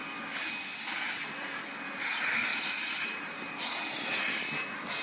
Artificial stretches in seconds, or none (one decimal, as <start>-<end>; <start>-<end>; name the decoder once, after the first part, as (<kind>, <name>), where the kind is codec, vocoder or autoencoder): 2.5-3.6 (vocoder, BigVGAN v2)